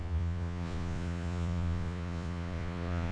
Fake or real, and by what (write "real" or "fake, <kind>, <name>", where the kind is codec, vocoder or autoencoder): fake, vocoder, Vocos